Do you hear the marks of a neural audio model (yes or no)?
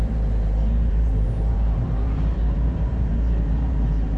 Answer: yes